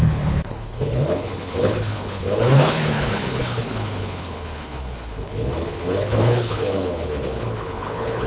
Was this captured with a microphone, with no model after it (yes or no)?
no